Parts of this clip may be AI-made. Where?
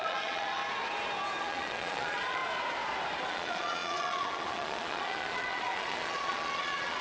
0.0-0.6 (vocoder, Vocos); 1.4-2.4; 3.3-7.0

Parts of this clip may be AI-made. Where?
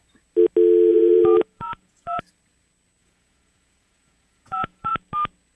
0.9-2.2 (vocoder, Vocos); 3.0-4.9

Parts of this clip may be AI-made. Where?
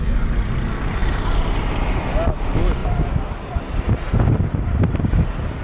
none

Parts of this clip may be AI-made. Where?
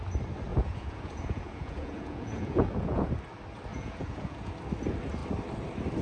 0.5-3.1 (vocoder, Vocos); 3.7-4.5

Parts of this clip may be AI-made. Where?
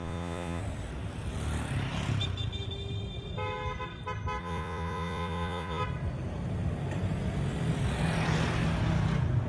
0.0-0.6 (vocoder, Vocos); 4.4-5.8